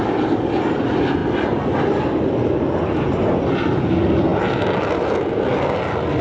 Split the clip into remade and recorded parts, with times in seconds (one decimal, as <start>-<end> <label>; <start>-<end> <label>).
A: 0.0-6.2 recorded